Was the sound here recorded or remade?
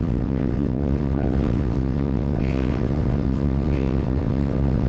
remade